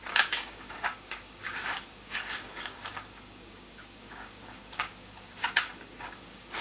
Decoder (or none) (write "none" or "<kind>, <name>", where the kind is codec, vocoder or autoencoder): codec, DAC